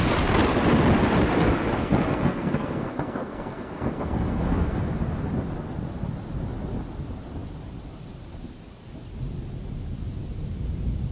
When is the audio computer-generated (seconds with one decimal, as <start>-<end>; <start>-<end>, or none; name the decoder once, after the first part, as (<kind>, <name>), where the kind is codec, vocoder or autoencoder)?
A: 1.8-4.8 (codec, SNAC)